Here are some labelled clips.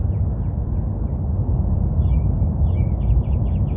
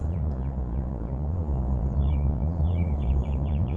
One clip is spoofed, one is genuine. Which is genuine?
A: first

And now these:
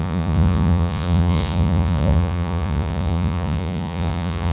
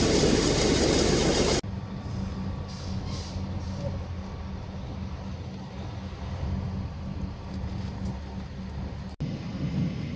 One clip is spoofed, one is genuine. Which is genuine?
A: second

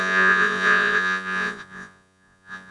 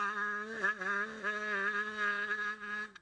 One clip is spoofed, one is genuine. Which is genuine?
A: second